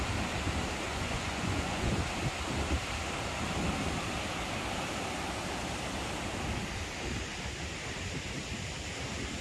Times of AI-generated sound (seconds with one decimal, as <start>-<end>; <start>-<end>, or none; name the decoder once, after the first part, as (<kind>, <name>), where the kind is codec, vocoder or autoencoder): 0.9-1.9 (vocoder, Vocos)